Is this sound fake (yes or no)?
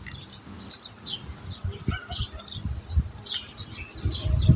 no